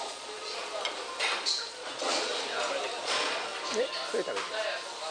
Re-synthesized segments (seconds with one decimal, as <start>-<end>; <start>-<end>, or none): 0.0-0.7; 1.7-2.3; 3.0-3.5